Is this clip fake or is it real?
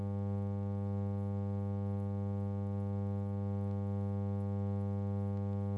real